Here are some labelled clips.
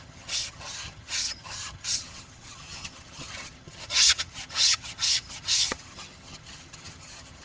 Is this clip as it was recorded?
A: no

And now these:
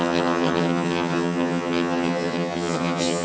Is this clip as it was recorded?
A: no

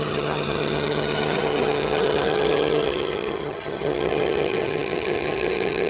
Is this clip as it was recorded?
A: no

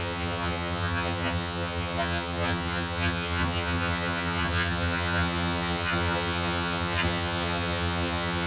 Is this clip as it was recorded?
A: no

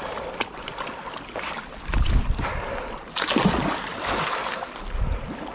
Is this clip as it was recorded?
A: yes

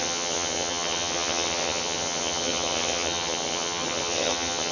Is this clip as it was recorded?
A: no